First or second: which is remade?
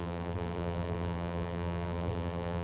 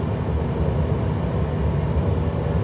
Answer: first